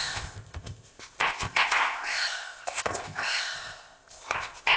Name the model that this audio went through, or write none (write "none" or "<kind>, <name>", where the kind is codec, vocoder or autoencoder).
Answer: codec, ZipCodec